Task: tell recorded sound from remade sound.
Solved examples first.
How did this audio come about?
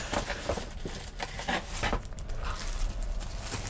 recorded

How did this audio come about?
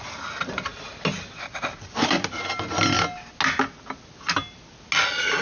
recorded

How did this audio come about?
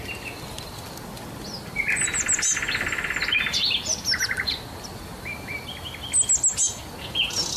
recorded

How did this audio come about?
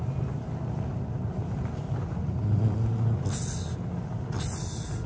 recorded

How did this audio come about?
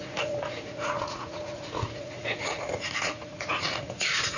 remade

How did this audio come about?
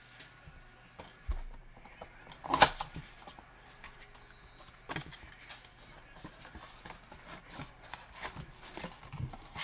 recorded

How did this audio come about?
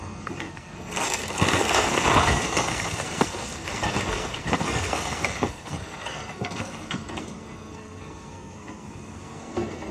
remade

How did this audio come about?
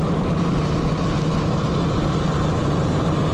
recorded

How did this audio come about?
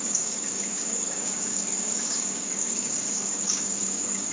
remade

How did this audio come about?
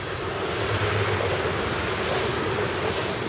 recorded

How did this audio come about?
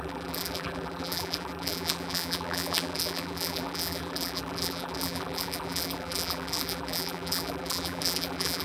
remade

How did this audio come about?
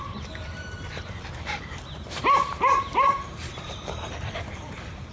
remade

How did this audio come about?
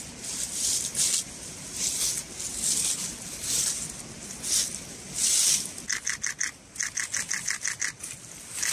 recorded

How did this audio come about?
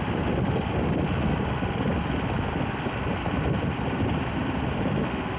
recorded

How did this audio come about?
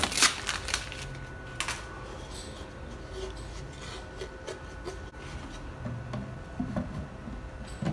recorded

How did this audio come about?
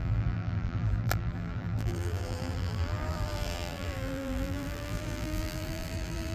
remade